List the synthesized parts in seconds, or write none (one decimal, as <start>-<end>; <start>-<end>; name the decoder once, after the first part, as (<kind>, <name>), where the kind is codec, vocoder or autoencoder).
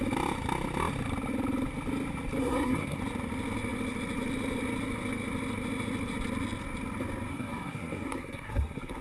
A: 2.4-3.0 (codec, SNAC); 7.3-9.0